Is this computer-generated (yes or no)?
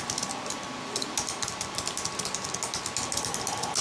no